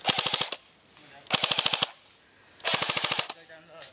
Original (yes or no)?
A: yes